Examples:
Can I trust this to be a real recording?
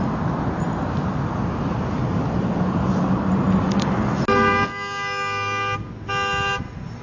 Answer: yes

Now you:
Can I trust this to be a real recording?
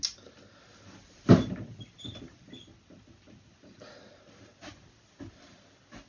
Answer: yes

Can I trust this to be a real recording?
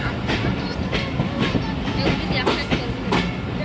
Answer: yes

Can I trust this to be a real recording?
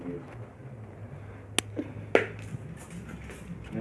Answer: yes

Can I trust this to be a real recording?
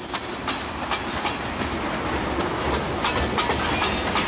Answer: yes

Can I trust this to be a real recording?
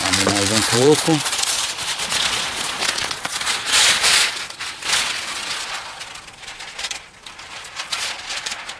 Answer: no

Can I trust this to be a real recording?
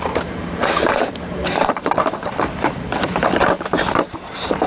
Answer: no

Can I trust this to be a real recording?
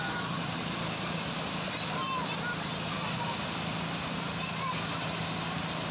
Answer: yes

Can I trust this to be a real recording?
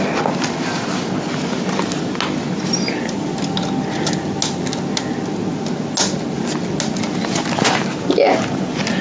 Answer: yes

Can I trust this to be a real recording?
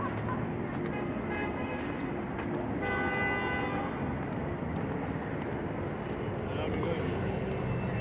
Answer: yes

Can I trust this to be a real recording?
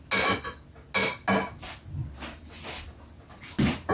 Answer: yes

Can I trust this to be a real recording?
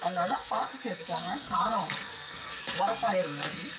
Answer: no